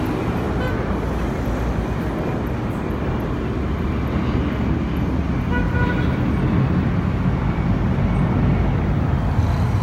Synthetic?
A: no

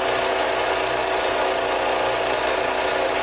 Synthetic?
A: no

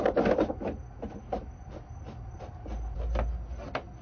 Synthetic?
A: no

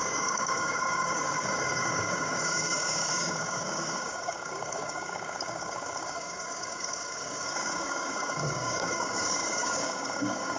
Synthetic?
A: yes